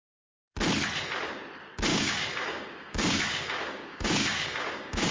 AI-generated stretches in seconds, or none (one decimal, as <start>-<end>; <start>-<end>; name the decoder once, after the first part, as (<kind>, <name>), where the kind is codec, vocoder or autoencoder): 1.9-5.1 (codec, DAC)